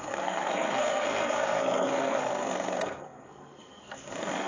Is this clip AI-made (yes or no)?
yes